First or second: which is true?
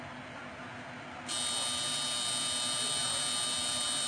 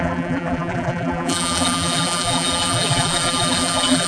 first